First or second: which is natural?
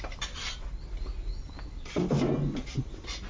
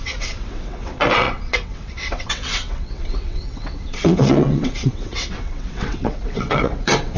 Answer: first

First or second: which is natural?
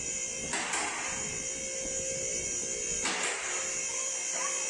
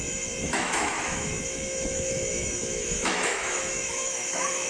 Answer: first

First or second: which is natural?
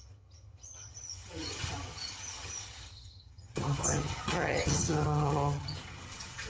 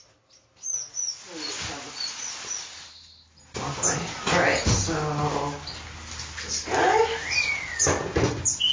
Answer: second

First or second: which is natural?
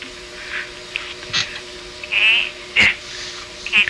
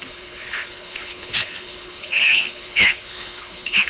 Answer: first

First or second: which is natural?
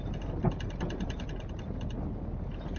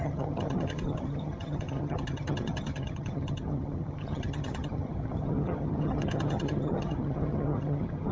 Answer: first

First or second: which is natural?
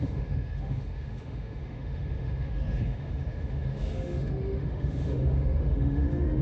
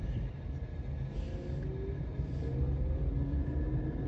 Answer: second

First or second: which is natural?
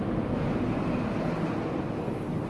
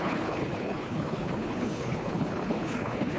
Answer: first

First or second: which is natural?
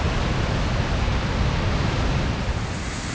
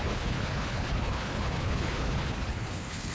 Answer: first